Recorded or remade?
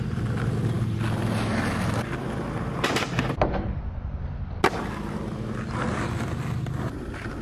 recorded